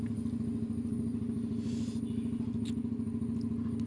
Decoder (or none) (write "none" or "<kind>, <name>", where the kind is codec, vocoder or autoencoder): none